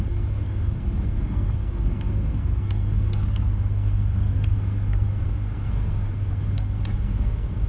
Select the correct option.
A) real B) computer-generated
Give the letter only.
B